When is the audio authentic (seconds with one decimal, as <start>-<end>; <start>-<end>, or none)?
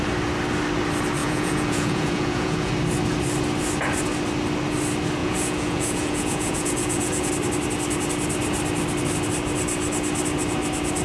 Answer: 0.0-1.2; 2.7-5.2; 7.3-11.0